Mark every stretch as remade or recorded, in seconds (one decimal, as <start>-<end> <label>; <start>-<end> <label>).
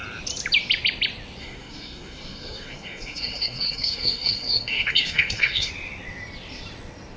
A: 0.0-1.4 recorded; 1.4-5.7 remade; 5.7-7.2 recorded